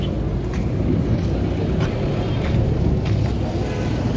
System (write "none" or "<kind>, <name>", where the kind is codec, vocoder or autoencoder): none